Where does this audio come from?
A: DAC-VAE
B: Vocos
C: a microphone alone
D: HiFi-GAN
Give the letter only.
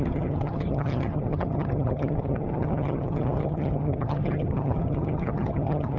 D